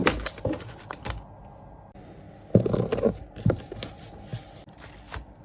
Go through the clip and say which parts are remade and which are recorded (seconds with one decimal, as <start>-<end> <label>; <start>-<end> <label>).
0.0-5.4 recorded